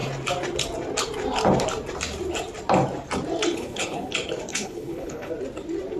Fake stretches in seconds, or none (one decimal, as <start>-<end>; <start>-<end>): 3.5-4.1; 4.5-5.3